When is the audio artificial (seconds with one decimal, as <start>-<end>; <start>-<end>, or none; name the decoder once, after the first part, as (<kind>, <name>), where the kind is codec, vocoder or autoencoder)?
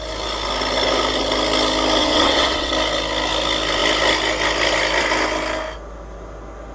2.0-2.7 (vocoder, WaveNeXt)